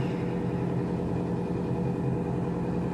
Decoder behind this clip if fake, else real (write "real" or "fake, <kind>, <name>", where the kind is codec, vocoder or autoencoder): real